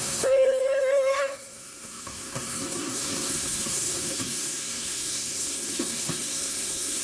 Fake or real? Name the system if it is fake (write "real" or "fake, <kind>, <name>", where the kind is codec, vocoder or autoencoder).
fake, codec, SNAC